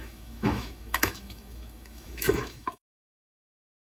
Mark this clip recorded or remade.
remade